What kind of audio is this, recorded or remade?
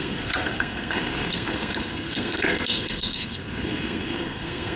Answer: remade